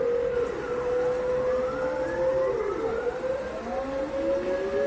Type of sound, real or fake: real